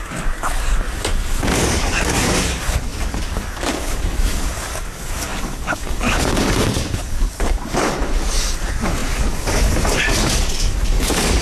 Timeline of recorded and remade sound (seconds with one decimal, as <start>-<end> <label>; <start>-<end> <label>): 0.0-11.4 remade

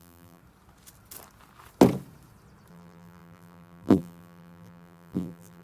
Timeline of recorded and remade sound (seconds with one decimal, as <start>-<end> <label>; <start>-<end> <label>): 0.0-0.4 remade; 0.4-2.7 recorded; 2.7-5.6 remade

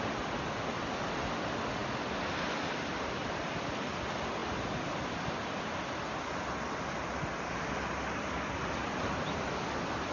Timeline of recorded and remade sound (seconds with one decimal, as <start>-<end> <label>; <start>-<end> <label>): 0.0-8.8 recorded; 8.8-10.1 remade